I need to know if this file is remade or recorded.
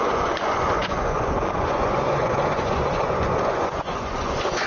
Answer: remade